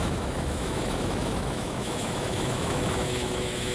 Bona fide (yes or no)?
no